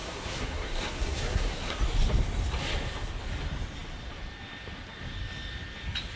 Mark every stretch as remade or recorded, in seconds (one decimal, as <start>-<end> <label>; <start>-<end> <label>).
0.0-1.8 remade; 1.8-6.2 recorded